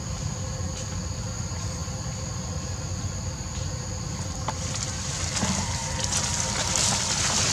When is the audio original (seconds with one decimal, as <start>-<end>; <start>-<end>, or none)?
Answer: 0.0-7.5